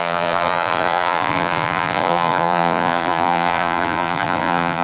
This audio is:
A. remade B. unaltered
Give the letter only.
A